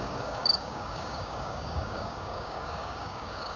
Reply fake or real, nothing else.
fake